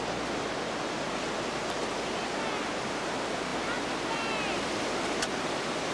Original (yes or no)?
yes